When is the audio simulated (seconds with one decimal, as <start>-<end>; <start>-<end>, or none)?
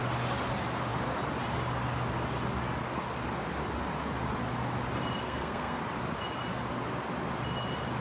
5.2-5.8